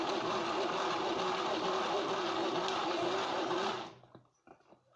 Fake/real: real